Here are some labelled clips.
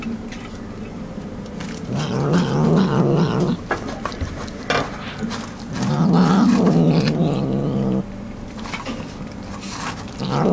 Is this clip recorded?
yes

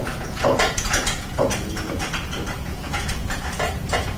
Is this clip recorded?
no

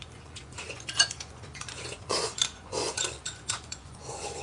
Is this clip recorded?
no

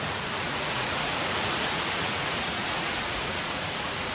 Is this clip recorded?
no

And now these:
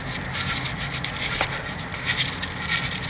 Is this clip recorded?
yes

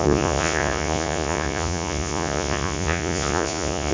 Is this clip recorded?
no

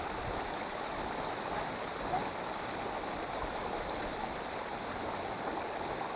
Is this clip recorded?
yes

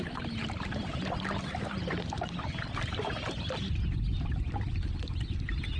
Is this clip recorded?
yes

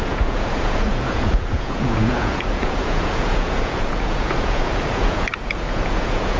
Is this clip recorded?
no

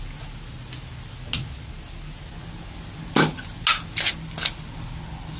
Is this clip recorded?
yes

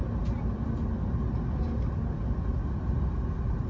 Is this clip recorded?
yes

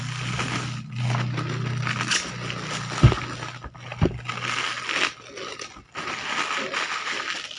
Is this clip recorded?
yes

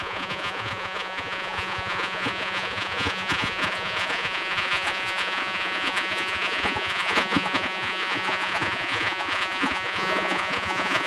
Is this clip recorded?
no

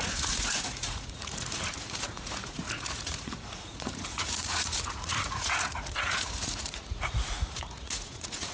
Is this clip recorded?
no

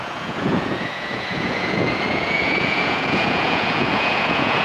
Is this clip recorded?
no